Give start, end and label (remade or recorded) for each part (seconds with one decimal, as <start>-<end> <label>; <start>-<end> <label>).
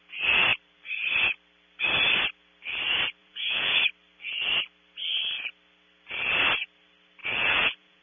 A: 0.0-3.2 recorded; 3.2-3.8 remade; 3.8-7.2 recorded; 7.2-8.0 remade